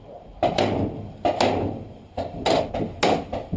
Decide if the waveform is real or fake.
real